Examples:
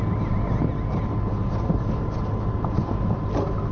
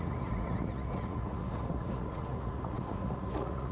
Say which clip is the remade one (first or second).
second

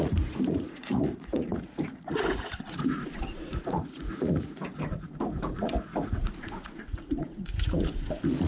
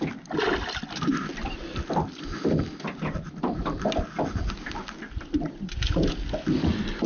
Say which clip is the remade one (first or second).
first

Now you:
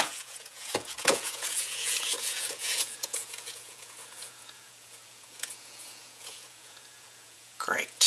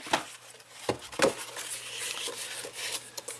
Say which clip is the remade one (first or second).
first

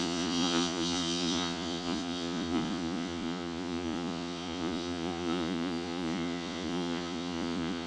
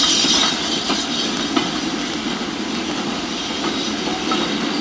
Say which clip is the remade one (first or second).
first